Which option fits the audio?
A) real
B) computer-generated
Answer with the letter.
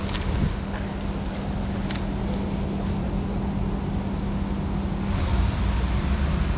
A